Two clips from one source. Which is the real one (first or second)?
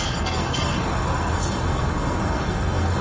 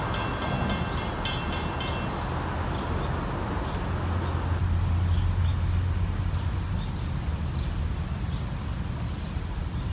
second